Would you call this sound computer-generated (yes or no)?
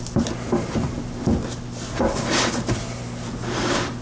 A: no